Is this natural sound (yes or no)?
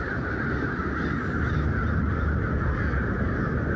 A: yes